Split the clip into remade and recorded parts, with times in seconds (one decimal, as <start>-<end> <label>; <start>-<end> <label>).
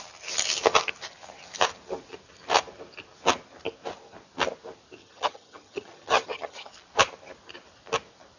0.0-5.0 recorded; 5.0-6.7 remade; 6.7-8.4 recorded